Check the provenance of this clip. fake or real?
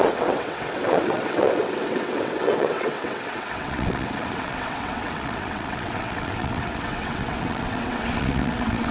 fake